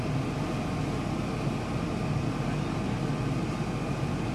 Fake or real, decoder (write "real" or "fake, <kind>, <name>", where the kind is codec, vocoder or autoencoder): real